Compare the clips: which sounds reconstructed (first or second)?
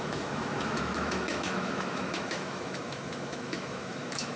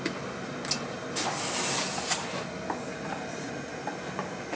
first